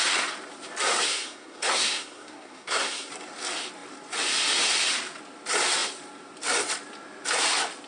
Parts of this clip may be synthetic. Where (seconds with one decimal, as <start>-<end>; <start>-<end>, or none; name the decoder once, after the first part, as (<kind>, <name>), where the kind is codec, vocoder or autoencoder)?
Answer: 1.1-3.1 (codec, SNAC)